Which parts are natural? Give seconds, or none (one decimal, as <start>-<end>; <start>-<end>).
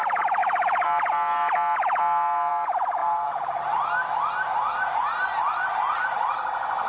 0.0-3.0; 3.6-6.9